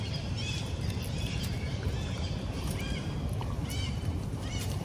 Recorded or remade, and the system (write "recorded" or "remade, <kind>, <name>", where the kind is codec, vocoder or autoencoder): remade, vocoder, BigVGAN v2